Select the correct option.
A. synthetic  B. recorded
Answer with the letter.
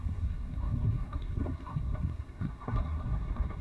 A